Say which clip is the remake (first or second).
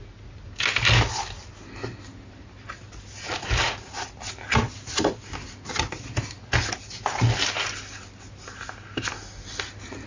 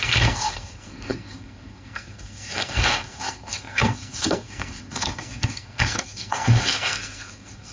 second